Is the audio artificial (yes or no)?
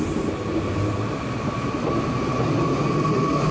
no